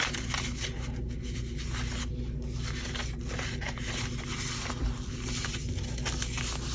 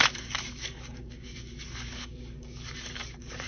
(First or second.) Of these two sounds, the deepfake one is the second